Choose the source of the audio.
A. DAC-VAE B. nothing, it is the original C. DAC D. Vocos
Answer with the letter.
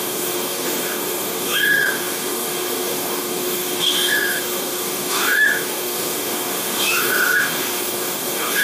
C